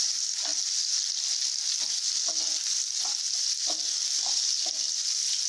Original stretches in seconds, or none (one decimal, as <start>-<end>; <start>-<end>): 0.5-2.4